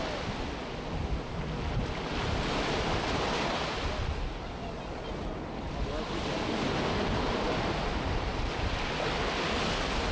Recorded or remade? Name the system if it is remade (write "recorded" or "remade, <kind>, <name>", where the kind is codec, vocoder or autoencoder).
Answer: recorded